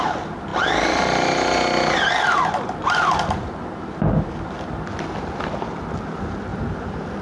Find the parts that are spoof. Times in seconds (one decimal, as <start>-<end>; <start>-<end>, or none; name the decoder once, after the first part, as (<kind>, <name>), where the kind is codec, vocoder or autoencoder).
none